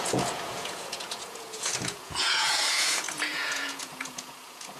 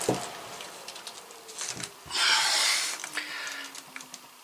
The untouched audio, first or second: second